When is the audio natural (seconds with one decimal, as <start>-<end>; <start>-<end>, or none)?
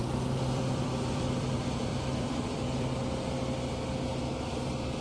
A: 3.0-5.0